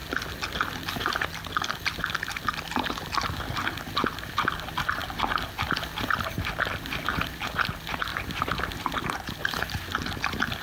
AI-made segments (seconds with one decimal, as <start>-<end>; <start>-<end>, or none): 8.1-9.3